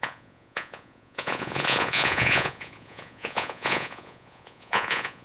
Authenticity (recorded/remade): remade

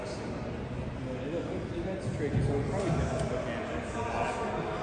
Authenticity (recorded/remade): recorded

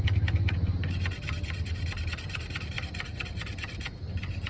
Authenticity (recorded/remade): recorded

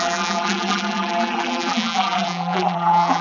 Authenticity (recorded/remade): remade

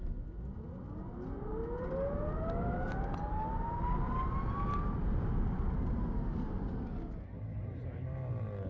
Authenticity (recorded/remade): recorded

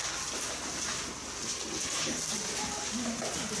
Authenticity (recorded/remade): recorded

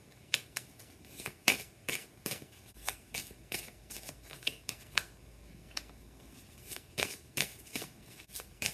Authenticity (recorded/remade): remade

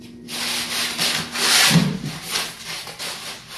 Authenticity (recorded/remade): recorded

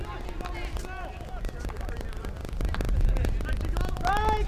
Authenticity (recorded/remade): recorded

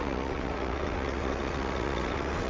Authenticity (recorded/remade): remade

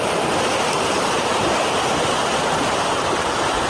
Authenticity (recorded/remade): remade